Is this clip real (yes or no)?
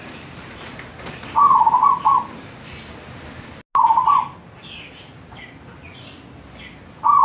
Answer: yes